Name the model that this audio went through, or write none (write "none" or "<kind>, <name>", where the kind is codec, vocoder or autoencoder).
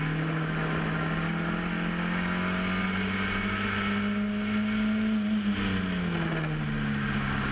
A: none